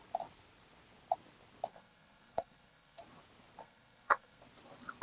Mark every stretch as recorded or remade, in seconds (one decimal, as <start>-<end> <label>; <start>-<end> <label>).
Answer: 0.0-1.7 recorded; 1.7-3.0 remade; 3.0-3.6 recorded; 3.6-4.4 remade; 4.4-5.0 recorded